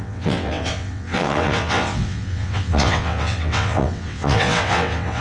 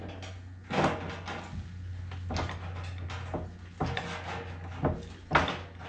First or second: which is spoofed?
first